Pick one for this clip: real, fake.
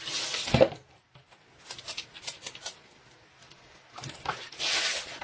real